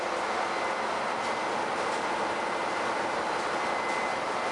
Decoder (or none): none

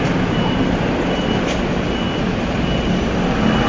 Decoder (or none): none